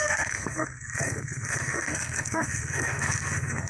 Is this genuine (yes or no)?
no